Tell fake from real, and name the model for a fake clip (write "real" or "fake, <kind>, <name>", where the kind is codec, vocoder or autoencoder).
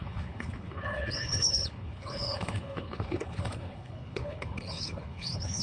fake, codec, HILCodec